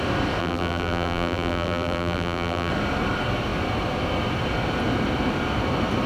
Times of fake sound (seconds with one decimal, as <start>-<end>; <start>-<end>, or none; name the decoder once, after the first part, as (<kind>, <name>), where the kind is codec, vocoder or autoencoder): 0.4-2.7 (vocoder, BigVGAN v2)